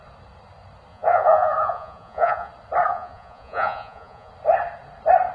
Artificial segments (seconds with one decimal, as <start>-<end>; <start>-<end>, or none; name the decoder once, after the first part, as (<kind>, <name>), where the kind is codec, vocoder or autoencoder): 0.9-2.5 (vocoder, Vocos); 2.9-4.3